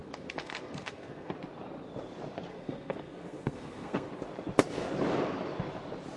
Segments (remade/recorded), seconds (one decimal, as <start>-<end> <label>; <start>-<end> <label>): 0.0-1.3 remade; 1.3-2.5 recorded; 2.5-4.1 remade; 4.1-6.2 recorded